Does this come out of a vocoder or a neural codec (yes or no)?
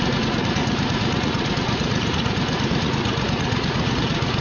yes